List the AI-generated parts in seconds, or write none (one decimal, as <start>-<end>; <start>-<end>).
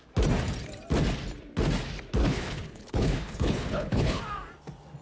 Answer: 2.2-4.2